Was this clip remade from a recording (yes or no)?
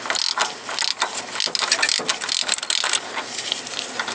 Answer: no